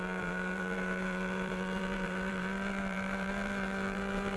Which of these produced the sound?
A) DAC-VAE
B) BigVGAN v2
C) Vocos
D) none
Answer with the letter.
B